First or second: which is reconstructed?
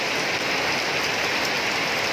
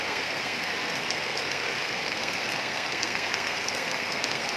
second